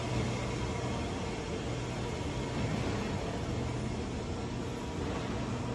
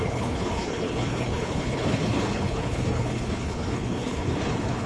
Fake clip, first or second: second